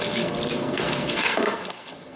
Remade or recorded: remade